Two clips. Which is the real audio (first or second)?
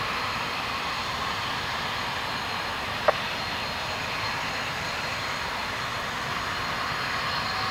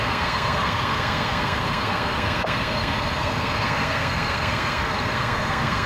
first